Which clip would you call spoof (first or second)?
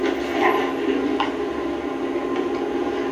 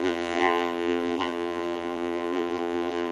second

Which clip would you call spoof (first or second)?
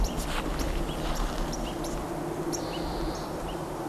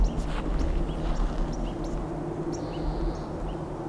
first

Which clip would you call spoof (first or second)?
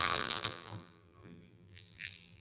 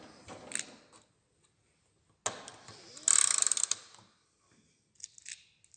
first